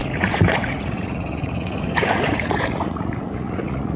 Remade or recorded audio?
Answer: remade